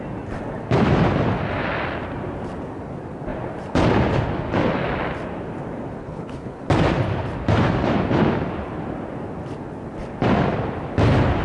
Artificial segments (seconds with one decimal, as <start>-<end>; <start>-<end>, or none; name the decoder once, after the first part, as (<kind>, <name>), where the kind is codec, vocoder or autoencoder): 6.0-6.6 (codec, HILCodec)